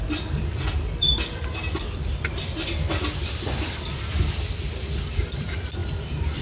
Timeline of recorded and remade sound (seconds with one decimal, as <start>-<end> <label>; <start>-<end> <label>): 0.0-5.8 recorded; 5.8-6.4 remade